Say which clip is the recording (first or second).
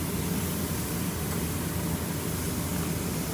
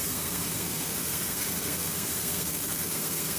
first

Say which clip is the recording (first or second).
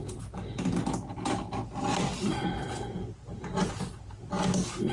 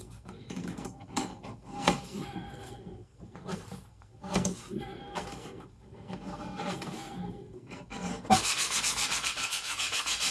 first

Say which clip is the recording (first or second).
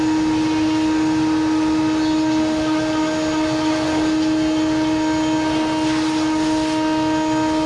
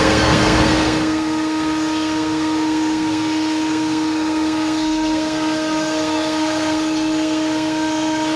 first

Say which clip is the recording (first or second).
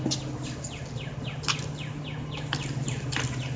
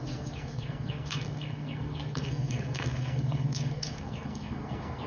first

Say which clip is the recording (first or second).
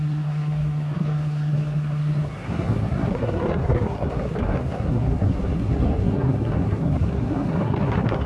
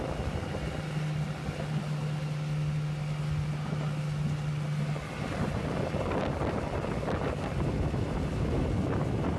second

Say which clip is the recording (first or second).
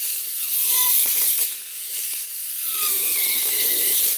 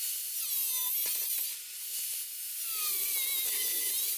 second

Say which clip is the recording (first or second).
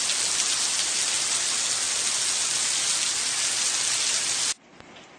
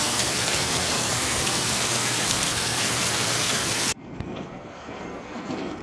first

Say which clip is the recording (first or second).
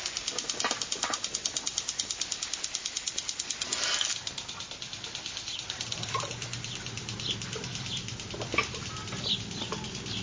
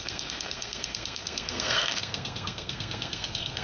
first